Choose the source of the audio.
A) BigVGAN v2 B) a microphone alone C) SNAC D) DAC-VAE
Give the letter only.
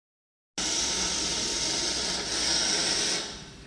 B